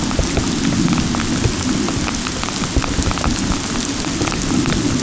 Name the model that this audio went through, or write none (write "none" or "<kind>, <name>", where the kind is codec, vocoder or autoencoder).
none